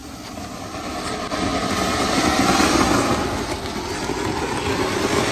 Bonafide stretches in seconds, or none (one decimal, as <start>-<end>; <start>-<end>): 0.0-0.6; 1.5-4.7